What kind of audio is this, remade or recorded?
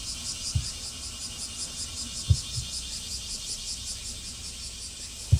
recorded